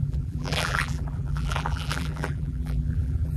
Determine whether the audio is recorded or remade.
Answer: remade